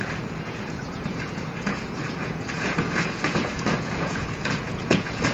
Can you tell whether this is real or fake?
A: fake